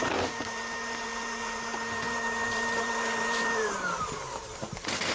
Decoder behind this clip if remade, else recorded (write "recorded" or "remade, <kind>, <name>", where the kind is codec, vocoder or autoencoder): remade, vocoder, BigVGAN v2